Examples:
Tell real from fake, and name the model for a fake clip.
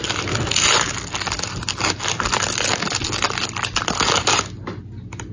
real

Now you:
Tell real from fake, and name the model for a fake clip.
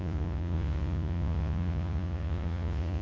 fake, vocoder, Vocos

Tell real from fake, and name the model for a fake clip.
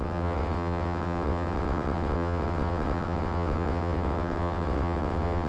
fake, vocoder, WaveNeXt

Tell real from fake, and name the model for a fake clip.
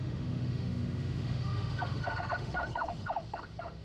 fake, autoencoder, DAC-VAE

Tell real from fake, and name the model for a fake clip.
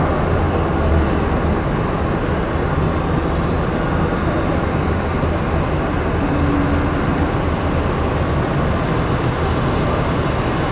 real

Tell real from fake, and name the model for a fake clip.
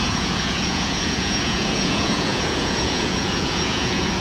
fake, vocoder, Vocos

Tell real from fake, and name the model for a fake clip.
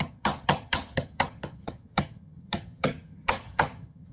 fake, vocoder, HiFi-GAN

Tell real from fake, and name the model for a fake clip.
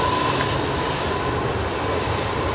real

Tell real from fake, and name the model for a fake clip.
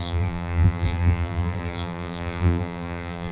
fake, vocoder, BigVGAN v2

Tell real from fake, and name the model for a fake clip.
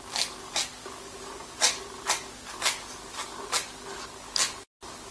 real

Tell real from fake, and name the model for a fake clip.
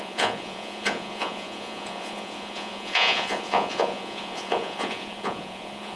fake, vocoder, Vocos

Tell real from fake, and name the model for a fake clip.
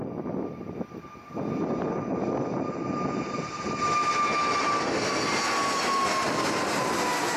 real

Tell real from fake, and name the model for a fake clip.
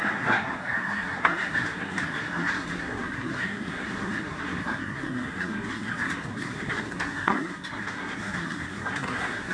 fake, codec, SNAC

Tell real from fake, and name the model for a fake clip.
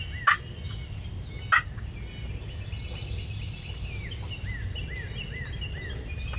real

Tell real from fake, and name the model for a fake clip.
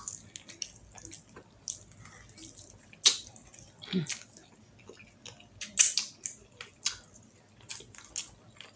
real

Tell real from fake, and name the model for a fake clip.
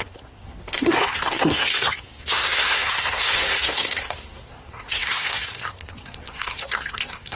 fake, codec, SNAC